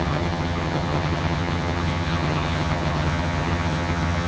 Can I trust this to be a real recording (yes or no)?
no